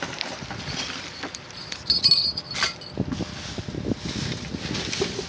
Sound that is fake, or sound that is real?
real